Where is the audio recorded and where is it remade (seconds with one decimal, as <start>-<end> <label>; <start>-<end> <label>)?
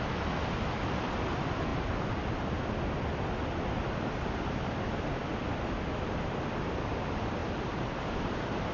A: 0.0-8.7 recorded